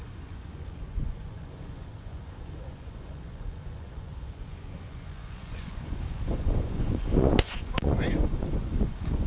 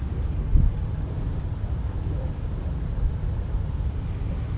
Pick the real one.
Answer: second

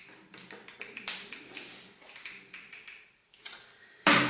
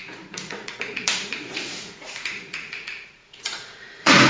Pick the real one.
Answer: first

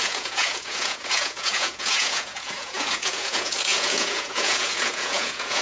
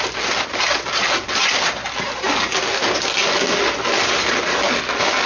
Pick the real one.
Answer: second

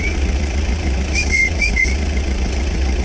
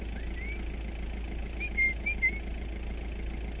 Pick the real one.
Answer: second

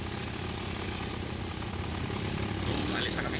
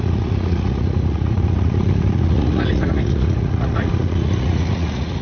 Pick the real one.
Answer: first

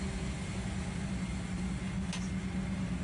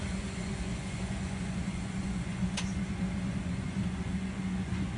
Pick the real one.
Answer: first